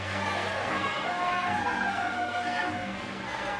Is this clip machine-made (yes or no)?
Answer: yes